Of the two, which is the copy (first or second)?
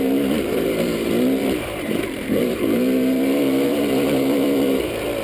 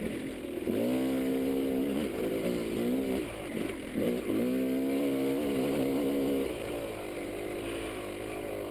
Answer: first